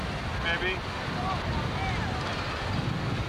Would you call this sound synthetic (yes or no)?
no